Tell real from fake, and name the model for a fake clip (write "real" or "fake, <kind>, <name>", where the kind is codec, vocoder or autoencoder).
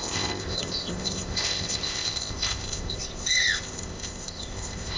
fake, codec, ZipCodec